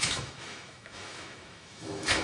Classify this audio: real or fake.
fake